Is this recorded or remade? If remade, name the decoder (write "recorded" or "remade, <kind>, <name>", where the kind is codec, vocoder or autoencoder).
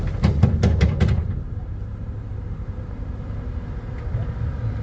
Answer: recorded